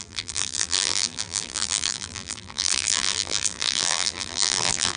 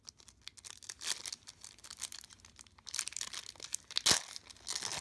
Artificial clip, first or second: first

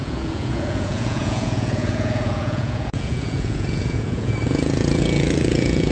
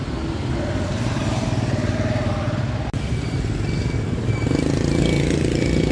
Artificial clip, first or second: first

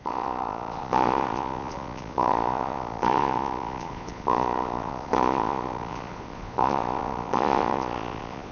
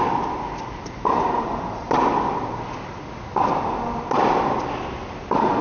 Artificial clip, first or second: first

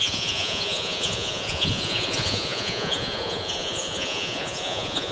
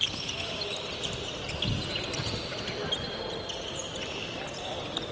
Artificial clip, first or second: first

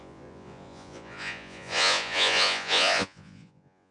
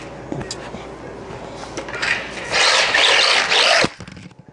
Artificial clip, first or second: first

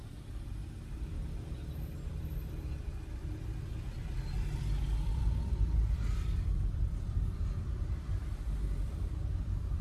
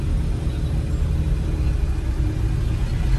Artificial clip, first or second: first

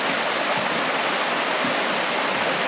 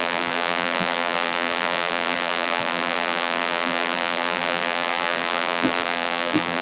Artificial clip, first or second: second